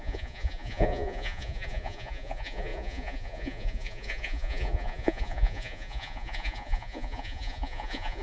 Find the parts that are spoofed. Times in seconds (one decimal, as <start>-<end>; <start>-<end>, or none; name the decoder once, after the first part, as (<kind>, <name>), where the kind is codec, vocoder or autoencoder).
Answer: 0.0-8.2 (vocoder, Vocos)